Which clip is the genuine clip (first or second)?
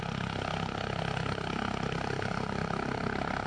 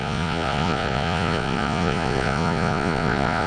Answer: first